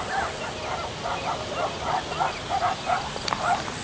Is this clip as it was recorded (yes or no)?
yes